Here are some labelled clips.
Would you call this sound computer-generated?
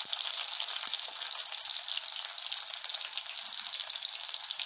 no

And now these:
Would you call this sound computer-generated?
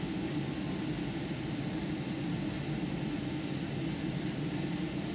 no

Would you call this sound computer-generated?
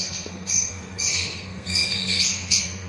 yes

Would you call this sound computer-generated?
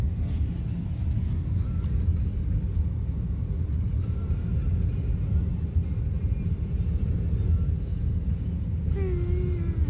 no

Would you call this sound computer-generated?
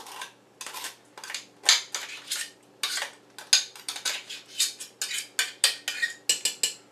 no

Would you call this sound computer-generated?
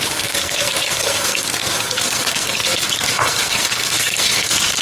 yes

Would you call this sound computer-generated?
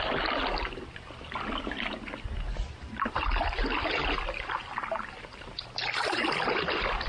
no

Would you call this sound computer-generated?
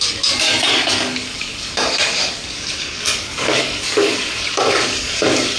yes